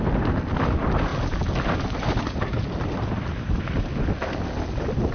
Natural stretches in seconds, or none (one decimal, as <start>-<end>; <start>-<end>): 0.0-5.1